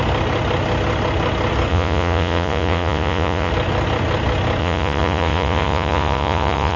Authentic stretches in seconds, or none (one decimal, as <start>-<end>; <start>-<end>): 0.0-1.7; 3.5-4.6